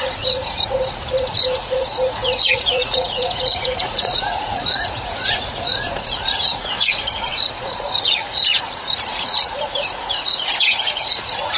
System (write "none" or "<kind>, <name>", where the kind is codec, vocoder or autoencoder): vocoder, Vocos